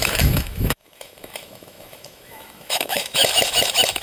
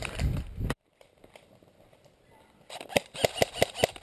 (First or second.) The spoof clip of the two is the first